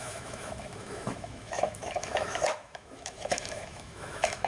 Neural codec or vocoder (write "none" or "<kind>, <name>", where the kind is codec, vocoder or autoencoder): autoencoder, DAC-VAE